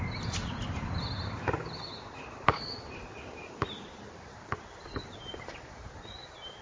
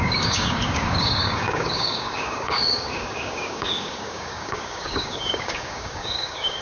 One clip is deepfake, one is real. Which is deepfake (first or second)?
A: second